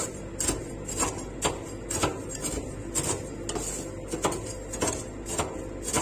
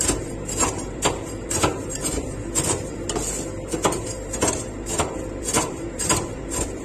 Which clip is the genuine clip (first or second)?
first